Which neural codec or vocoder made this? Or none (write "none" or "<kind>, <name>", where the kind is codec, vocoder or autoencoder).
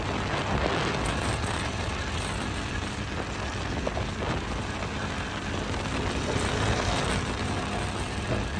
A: none